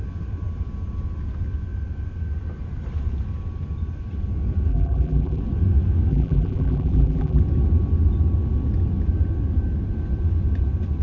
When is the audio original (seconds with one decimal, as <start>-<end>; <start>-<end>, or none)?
0.0-4.7; 5.4-6.1; 7.4-11.0